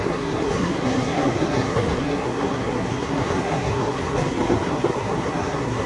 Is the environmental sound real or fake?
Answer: fake